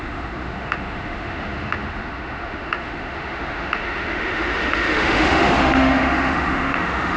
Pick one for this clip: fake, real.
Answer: fake